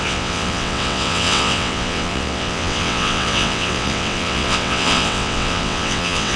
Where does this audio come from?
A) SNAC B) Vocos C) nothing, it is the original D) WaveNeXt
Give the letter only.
D